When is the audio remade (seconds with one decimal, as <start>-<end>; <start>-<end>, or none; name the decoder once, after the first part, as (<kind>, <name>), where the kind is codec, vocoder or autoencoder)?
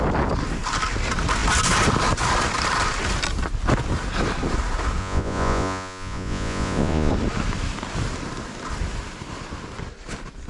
5.0-7.1 (vocoder, Vocos)